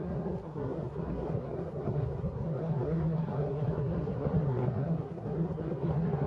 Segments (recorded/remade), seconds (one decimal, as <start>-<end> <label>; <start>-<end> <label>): 0.0-6.3 remade

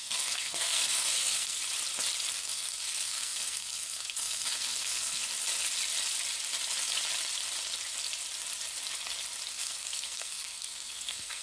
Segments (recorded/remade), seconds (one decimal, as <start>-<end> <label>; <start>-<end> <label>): 0.0-1.6 remade; 1.6-2.3 recorded; 2.3-5.2 remade; 5.2-9.5 recorded; 9.5-11.4 remade

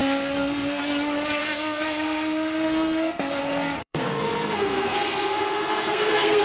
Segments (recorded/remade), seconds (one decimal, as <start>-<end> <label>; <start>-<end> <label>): 0.0-0.8 remade; 0.8-1.4 recorded; 1.4-3.4 remade; 3.4-3.8 recorded; 3.8-6.4 remade

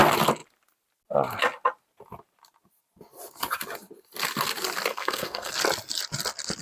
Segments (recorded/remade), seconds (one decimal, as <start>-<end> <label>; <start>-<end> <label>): 0.0-4.9 recorded; 4.9-5.5 remade; 5.5-6.6 recorded

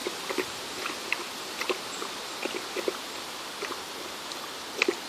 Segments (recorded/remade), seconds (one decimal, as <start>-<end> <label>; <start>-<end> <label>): 0.0-5.1 recorded

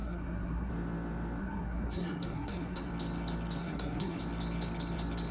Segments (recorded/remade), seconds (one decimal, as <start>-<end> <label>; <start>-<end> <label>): 0.0-0.7 remade; 0.7-1.4 recorded; 1.4-2.9 remade; 2.9-3.6 recorded; 3.6-4.2 remade; 4.2-5.3 recorded

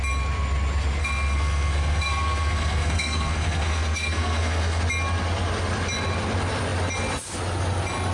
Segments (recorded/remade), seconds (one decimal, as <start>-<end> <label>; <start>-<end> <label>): 0.0-1.0 recorded; 1.0-4.8 remade; 4.8-8.1 recorded